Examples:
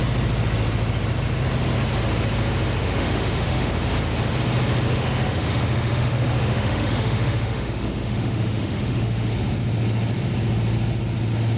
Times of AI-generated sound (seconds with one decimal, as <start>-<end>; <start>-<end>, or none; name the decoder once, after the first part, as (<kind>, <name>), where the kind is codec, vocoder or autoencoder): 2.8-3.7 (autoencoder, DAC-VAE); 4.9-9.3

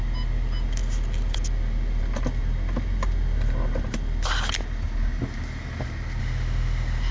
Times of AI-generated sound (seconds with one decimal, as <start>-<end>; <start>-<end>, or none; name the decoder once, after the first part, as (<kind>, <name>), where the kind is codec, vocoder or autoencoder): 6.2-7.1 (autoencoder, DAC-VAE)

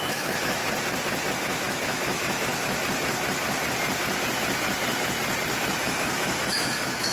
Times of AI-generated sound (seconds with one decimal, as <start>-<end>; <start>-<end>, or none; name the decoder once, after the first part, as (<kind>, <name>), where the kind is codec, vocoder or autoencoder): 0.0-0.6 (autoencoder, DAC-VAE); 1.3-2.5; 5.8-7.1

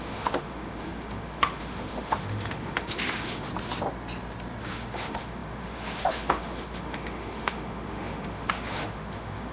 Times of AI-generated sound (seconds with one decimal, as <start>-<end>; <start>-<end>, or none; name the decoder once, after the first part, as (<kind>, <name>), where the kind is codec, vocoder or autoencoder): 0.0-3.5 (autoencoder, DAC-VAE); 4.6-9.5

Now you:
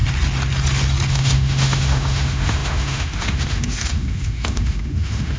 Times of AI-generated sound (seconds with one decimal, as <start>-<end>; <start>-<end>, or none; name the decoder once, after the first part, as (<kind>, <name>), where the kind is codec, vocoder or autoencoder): 1.1-5.4 (autoencoder, DAC-VAE)